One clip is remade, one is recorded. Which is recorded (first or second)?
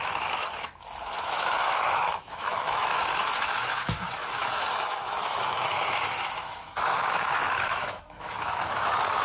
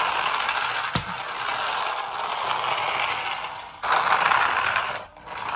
second